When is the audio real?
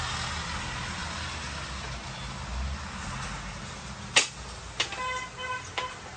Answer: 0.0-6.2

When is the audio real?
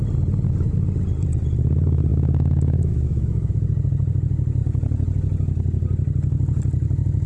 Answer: 0.0-2.1; 3.5-7.3